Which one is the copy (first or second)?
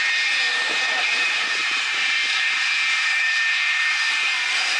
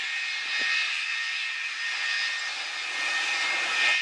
first